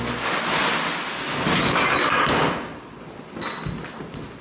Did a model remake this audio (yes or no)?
no